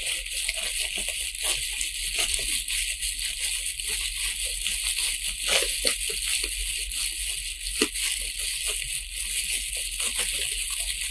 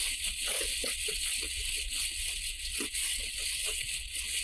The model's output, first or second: second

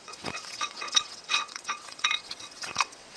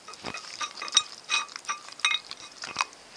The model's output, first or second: first